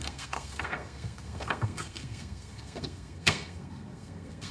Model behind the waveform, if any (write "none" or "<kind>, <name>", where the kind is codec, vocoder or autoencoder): codec, SNAC